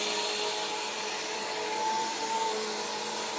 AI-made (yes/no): no